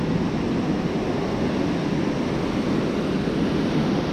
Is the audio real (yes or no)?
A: yes